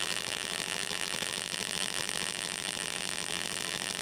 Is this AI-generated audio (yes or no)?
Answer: yes